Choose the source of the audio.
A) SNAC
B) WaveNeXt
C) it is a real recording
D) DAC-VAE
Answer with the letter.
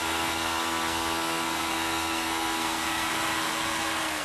A